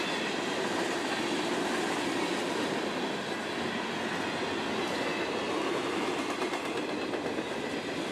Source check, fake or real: real